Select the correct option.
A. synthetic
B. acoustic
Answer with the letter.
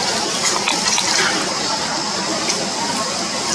B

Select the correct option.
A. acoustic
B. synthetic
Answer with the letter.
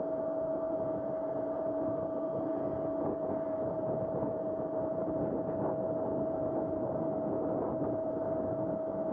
A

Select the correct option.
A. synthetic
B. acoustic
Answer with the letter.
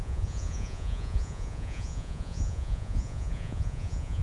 A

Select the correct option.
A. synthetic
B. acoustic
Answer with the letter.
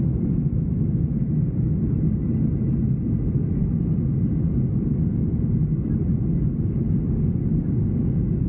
B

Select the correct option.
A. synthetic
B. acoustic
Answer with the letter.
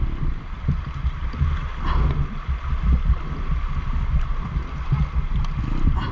B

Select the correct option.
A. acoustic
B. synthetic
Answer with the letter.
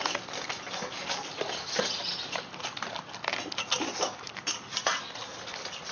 A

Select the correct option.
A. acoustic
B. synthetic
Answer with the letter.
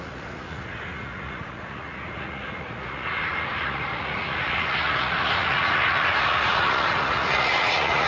B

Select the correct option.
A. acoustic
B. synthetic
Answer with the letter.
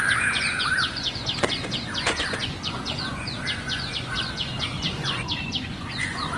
B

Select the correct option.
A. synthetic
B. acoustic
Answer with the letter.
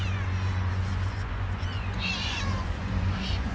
A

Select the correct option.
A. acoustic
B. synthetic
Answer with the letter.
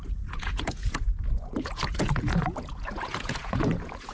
B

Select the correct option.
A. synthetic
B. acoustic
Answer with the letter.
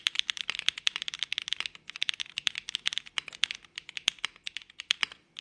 B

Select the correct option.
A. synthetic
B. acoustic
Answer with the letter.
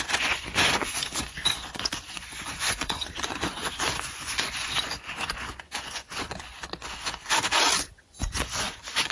A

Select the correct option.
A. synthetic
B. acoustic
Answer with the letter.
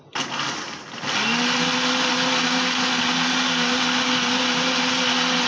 B